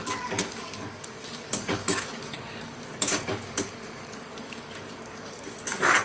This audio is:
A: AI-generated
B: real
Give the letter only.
A